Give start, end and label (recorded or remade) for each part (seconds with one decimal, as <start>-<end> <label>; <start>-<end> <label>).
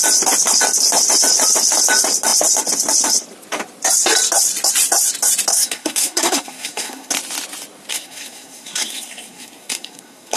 0.0-5.5 recorded; 5.5-7.1 remade; 7.1-7.9 recorded; 7.9-10.4 remade